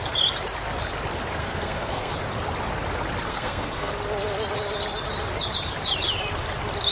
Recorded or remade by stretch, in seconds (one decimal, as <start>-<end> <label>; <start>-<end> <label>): 0.0-1.4 recorded; 1.4-2.1 remade; 2.1-3.3 recorded; 3.3-3.9 remade; 3.9-6.9 recorded